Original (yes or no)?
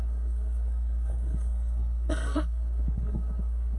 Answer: no